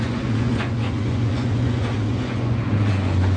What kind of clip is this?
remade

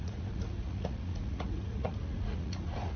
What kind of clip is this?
remade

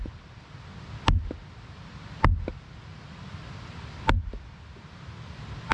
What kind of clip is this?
recorded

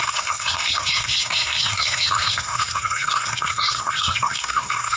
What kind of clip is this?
remade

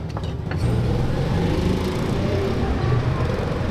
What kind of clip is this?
recorded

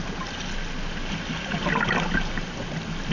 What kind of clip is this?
recorded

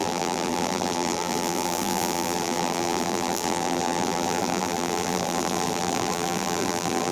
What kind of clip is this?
remade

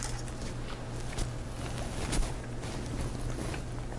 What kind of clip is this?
recorded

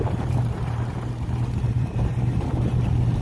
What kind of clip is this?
remade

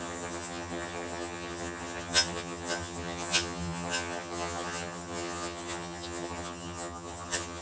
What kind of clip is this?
remade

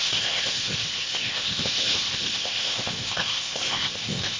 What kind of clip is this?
remade